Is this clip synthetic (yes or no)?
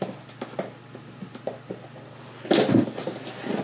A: no